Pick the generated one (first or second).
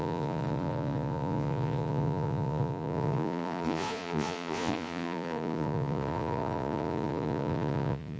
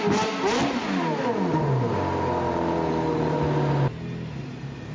first